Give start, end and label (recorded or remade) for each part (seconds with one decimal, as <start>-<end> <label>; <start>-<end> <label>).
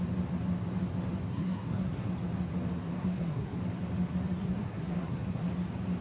0.0-1.3 recorded; 1.3-2.1 remade; 2.1-3.0 recorded; 3.0-3.6 remade; 3.6-4.4 recorded; 4.4-5.5 remade; 5.5-6.0 recorded